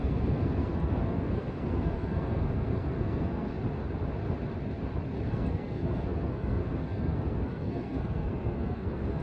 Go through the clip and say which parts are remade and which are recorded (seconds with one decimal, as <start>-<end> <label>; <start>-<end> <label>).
0.0-3.5 remade; 3.5-5.3 recorded; 5.3-9.2 remade